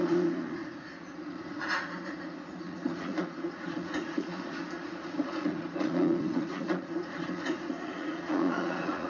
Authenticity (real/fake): fake